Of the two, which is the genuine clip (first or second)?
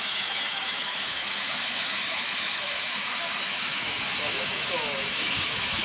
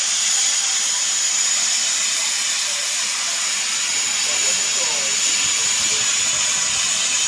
second